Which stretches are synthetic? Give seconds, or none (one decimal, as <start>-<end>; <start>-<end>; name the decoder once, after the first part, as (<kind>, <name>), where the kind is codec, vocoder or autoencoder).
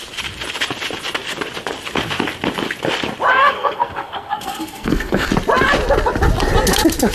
3.3-5.3 (codec, SNAC)